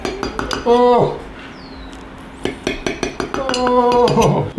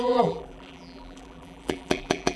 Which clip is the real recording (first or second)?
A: first